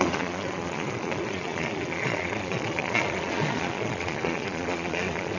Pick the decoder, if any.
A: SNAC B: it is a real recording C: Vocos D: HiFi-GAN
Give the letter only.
C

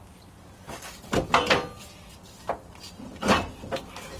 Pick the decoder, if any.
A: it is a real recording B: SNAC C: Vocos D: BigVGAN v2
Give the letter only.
A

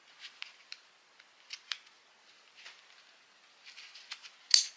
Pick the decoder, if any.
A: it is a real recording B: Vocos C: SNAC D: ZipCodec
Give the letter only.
A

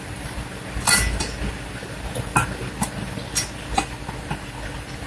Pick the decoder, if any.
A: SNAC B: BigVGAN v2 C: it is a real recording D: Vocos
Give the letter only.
C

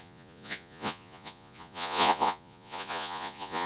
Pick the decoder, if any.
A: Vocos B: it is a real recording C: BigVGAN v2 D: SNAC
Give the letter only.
A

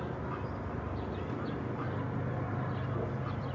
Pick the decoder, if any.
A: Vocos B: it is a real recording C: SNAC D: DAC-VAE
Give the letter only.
B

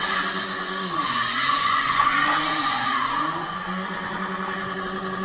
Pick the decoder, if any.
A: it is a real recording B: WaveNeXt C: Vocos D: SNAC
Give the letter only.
C